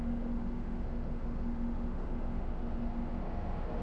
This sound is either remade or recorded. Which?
remade